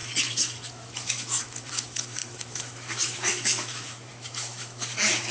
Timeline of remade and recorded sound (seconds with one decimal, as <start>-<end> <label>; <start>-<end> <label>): 0.0-5.3 remade